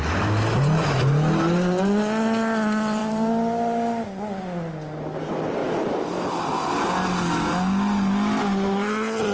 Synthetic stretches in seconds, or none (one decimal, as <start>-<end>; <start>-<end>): none